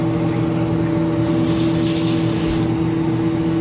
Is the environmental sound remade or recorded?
recorded